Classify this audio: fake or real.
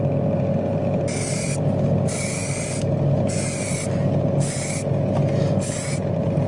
real